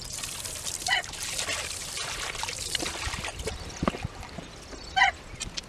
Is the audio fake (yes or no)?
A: no